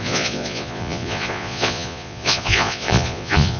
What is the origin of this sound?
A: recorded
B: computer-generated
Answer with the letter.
B